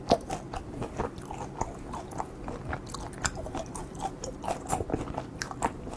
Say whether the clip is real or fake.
real